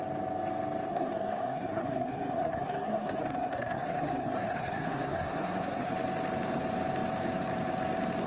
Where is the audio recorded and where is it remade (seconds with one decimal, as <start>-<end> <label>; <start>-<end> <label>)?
0.0-0.9 recorded; 0.9-5.9 remade; 5.9-8.3 recorded